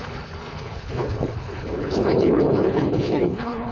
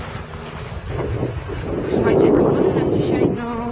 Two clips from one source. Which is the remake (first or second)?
first